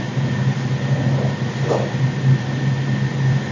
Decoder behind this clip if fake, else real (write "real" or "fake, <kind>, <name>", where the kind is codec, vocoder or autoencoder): real